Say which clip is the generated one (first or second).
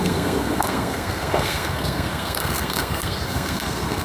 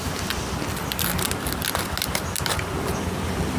first